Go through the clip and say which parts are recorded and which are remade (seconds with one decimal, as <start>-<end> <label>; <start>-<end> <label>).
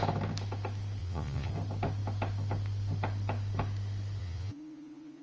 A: 0.0-1.0 recorded; 1.0-1.5 remade; 1.5-4.2 recorded; 4.2-5.2 remade